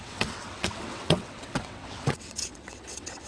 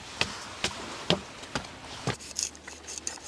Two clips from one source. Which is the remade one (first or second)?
first